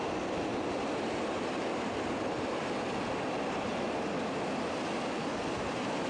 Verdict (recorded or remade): recorded